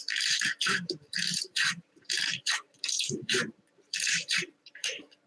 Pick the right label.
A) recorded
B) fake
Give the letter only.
B